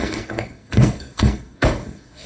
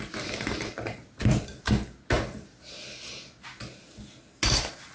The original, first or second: second